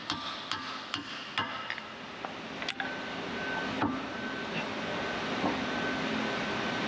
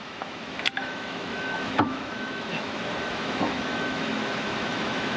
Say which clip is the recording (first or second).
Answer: first